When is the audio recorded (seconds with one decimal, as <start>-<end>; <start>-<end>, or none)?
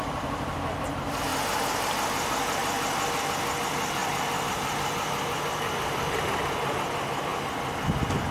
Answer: 0.0-8.3